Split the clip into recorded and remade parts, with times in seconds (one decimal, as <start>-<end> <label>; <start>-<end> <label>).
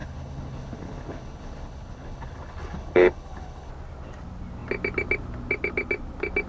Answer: 0.0-3.7 remade; 3.7-6.5 recorded